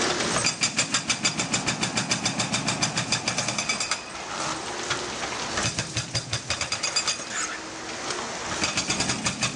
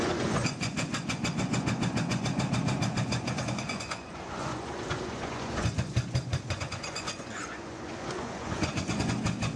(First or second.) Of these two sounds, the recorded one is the first